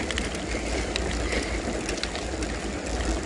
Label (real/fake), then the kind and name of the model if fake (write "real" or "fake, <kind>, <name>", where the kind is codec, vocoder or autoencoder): real